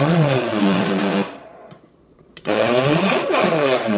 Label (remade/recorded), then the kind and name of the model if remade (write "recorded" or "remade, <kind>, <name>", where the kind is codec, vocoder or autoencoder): remade, vocoder, Vocos